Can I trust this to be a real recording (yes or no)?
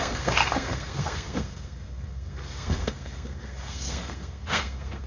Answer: no